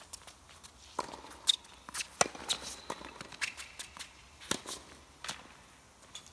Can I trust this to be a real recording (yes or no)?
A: yes